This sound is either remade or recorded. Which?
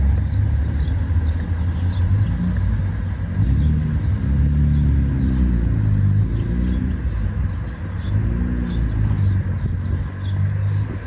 recorded